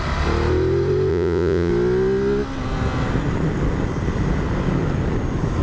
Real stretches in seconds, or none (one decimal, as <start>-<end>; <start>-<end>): 0.0-1.1; 1.7-5.6